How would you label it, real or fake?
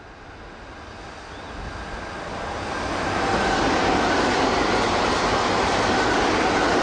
real